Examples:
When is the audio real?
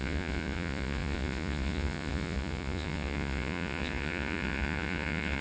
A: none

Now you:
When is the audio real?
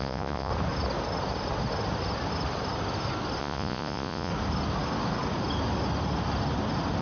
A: 0.5-3.4; 4.3-7.0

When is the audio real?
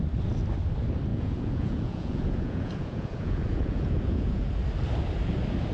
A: 0.0-1.1; 4.5-5.7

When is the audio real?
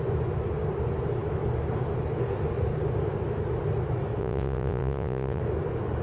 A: 0.0-4.2; 5.4-6.0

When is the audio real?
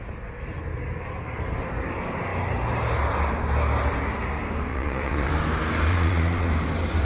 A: 0.0-4.7; 5.3-5.9; 6.5-7.0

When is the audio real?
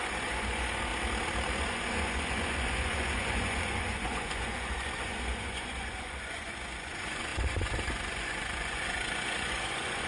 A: 0.9-1.5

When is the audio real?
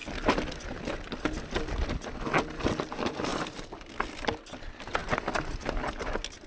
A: 0.0-6.5